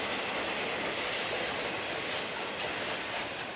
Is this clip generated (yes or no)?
no